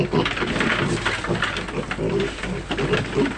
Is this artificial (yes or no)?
no